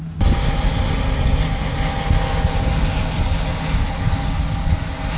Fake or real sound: real